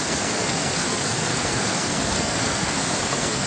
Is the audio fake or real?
fake